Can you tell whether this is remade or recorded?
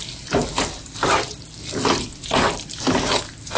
recorded